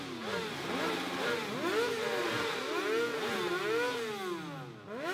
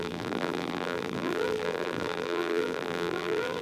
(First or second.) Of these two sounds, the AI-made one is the second